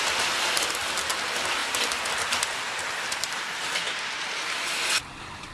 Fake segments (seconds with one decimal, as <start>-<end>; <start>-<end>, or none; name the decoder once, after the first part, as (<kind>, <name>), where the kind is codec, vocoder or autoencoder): 1.6-4.9 (vocoder, BigVGAN v2)